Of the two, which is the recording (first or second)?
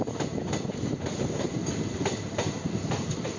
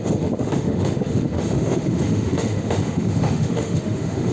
first